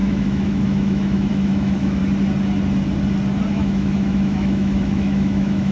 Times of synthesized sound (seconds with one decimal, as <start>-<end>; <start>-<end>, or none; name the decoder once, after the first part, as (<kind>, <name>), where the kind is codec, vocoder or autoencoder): 0.0-2.0 (autoencoder, DAC-VAE); 3.5-5.7